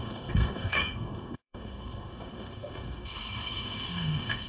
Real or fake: fake